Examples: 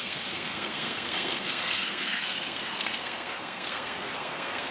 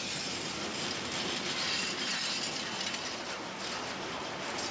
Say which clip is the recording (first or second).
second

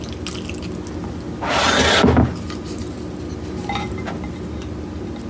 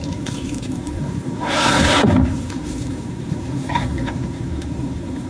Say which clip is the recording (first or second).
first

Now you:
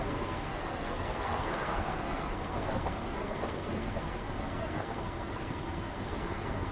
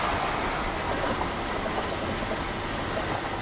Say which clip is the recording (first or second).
second